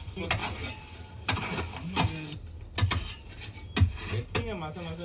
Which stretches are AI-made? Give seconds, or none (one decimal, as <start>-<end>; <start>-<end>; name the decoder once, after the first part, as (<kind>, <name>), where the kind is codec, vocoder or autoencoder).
0.4-1.6 (vocoder, BigVGAN v2)